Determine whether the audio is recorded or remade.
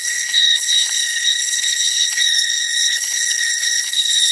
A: remade